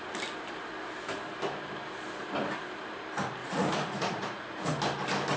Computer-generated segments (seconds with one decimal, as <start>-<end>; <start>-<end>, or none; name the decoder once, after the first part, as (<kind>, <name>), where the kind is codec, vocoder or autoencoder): 3.4-4.8 (vocoder, Vocos)